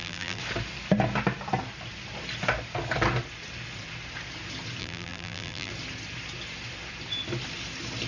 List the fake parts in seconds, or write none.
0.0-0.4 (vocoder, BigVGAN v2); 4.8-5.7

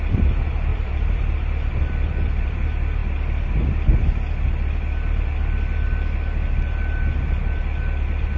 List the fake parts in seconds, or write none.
0.7-1.2 (vocoder, BigVGAN v2)